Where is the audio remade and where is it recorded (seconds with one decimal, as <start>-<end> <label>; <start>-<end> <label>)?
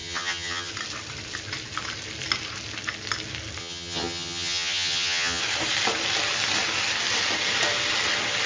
0.0-0.7 remade; 0.7-3.6 recorded; 3.6-5.4 remade; 5.4-8.5 recorded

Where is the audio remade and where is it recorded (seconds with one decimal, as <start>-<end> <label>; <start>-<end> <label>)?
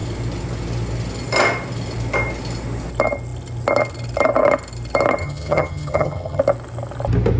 0.0-5.2 recorded; 5.2-6.4 remade; 6.4-7.4 recorded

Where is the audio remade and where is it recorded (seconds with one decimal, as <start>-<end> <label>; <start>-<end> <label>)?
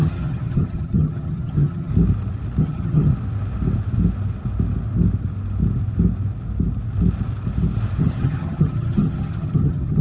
0.0-1.9 remade; 1.9-2.6 recorded; 2.6-3.1 remade; 3.1-8.0 recorded; 8.0-10.0 remade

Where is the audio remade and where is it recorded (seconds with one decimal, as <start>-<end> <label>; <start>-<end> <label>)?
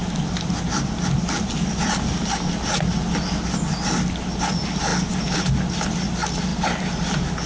0.0-7.5 recorded